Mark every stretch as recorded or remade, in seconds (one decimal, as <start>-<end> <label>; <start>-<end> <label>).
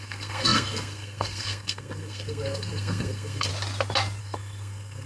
0.0-3.5 remade; 3.5-4.2 recorded; 4.2-5.1 remade